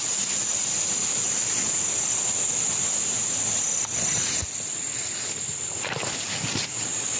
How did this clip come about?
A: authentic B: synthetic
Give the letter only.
A